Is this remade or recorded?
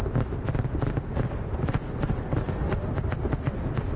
recorded